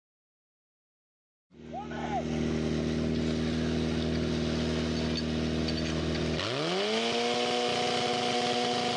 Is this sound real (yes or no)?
yes